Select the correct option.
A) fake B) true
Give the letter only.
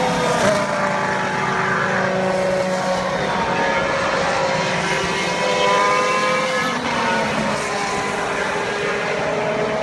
B